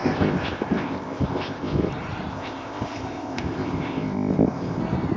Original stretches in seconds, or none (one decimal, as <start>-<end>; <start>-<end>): 1.9-2.3; 4.8-5.2